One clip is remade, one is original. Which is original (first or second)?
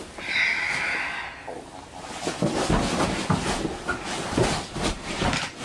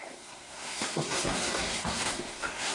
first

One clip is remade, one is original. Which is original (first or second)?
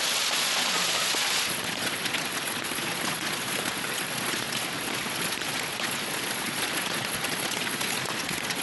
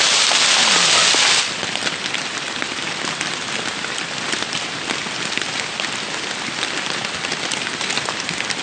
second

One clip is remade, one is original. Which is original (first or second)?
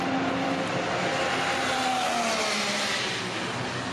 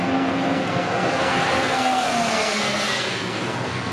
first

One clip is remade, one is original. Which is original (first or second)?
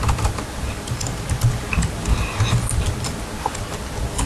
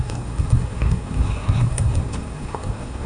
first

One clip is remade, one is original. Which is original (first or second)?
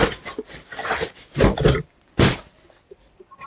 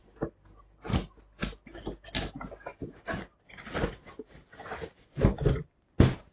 second